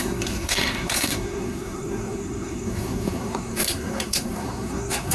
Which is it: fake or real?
fake